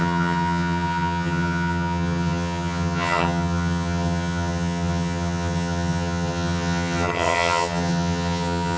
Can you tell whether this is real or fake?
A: fake